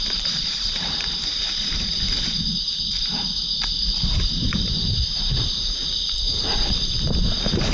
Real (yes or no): no